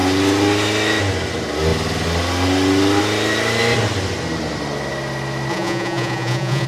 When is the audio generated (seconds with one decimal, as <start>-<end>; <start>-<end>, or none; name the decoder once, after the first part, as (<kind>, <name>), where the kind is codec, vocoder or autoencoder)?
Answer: 5.5-6.7 (vocoder, Vocos)